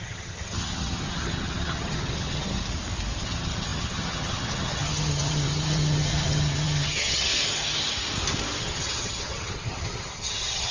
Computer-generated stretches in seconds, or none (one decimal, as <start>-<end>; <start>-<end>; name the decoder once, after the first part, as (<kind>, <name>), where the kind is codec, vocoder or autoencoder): 0.0-2.6 (vocoder, HiFi-GAN); 3.2-7.3; 8.6-10.7